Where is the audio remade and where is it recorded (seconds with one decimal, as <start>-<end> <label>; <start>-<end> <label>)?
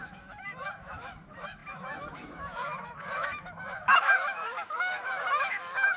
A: 0.0-6.0 remade